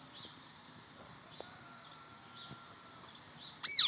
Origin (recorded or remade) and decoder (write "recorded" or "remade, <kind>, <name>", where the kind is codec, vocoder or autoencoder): recorded